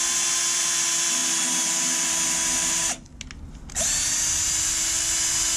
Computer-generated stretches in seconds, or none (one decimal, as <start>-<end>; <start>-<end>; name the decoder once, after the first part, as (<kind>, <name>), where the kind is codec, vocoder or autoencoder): none